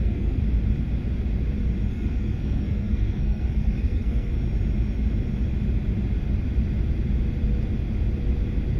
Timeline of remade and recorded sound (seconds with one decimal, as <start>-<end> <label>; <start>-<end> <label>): 0.0-0.4 remade; 0.4-1.9 recorded; 1.9-4.3 remade; 4.3-8.8 recorded